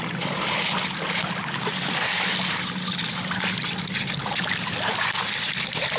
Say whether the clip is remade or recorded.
recorded